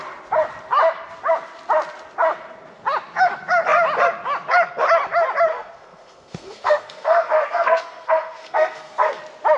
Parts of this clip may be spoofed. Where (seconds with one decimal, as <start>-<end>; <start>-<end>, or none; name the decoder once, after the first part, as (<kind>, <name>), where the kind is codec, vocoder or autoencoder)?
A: 5.5-9.2 (codec, SNAC)